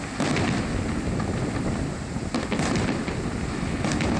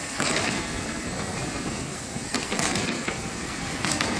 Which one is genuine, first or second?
first